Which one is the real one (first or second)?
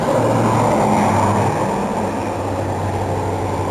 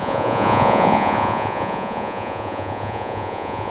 first